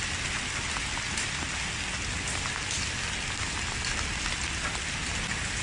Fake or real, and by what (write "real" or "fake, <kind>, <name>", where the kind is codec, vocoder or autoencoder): real